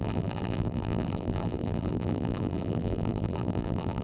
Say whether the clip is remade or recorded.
remade